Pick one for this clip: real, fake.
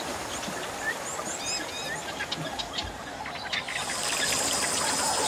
real